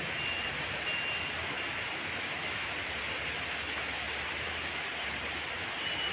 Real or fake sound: real